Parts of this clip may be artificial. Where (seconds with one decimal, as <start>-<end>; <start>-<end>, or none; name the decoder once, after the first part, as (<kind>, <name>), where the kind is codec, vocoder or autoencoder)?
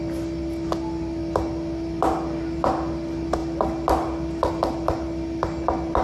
none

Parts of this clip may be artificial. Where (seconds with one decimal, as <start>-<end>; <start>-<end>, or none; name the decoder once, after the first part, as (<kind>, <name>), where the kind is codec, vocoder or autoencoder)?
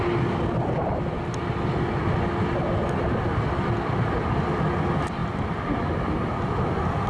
none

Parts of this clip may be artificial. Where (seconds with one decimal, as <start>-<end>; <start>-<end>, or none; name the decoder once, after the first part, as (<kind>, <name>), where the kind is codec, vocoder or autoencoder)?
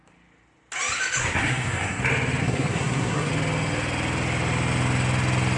1.2-2.0 (codec, SNAC); 2.4-3.3